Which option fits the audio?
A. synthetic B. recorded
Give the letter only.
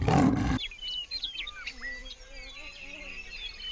B